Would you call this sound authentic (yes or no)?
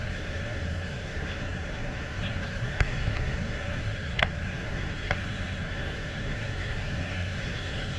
no